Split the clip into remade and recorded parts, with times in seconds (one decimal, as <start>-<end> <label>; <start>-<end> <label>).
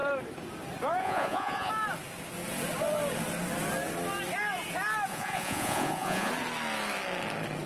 0.0-1.0 recorded; 1.0-1.7 remade; 1.7-5.1 recorded; 5.1-6.3 remade; 6.3-7.7 recorded